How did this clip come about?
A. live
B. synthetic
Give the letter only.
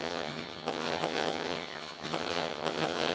B